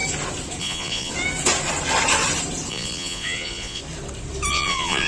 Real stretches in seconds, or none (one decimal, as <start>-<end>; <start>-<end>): 0.0-0.6; 1.1-2.7; 3.8-4.5